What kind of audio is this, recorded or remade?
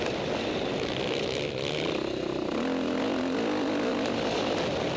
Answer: recorded